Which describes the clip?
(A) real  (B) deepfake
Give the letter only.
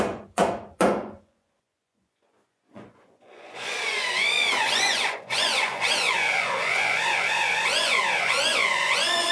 B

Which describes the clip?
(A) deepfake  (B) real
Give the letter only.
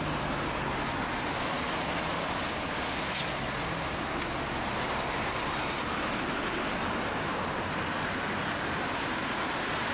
B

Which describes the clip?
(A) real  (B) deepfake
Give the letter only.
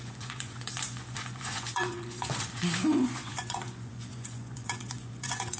B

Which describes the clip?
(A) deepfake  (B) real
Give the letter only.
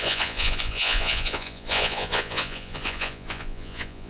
A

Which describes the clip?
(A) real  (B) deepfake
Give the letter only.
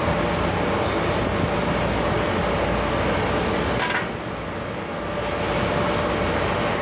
A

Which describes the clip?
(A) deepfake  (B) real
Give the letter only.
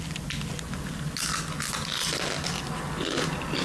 B